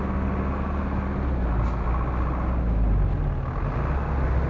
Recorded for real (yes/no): yes